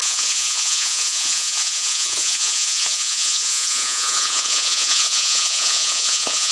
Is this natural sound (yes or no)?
no